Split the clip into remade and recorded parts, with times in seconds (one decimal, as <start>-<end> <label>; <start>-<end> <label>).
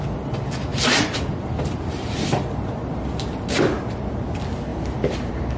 0.0-0.7 recorded; 0.7-4.1 remade; 4.1-4.7 recorded; 4.7-5.6 remade